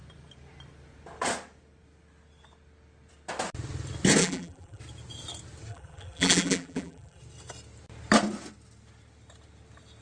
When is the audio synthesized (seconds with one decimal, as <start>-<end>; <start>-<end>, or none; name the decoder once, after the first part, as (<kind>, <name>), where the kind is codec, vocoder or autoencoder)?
4.2-4.8 (vocoder, BigVGAN v2); 5.7-7.2